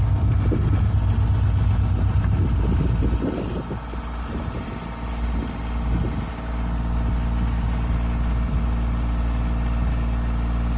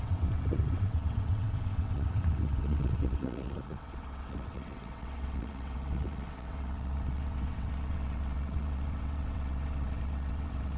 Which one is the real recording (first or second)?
first